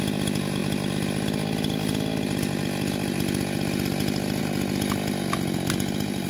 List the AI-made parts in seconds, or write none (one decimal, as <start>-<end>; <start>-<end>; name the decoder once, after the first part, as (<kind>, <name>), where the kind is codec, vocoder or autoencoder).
none